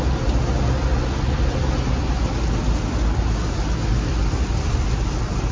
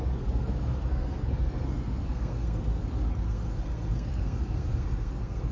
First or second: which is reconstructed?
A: second